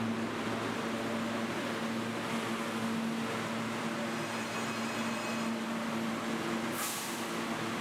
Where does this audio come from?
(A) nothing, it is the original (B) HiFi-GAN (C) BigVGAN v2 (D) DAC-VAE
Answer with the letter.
A